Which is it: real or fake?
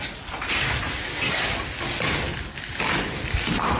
real